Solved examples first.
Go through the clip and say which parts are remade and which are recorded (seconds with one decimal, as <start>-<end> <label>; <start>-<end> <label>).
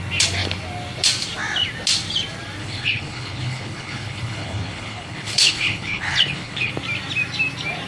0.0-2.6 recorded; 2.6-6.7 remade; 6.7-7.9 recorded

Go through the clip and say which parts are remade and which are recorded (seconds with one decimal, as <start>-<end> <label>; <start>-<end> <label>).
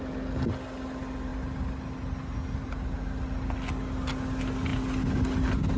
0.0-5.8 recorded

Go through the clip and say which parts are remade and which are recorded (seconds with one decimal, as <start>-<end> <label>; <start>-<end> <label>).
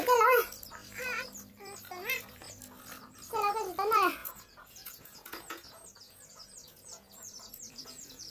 0.0-4.2 recorded; 4.2-8.3 remade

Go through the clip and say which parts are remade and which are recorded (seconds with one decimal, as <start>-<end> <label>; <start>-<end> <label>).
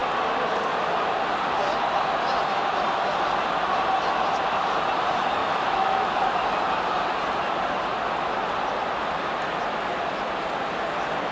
0.0-5.4 recorded; 5.4-6.2 remade; 6.2-11.3 recorded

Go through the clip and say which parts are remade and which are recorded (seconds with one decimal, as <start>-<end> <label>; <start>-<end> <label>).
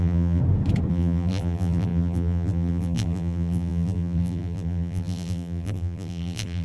0.0-0.4 remade; 0.4-0.9 recorded; 0.9-6.6 remade